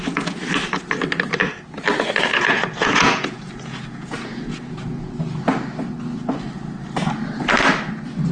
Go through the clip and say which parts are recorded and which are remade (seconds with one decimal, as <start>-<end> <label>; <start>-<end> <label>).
0.0-2.3 recorded; 2.3-5.1 remade; 5.1-8.3 recorded